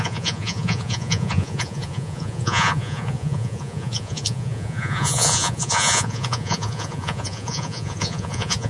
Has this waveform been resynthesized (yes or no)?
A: yes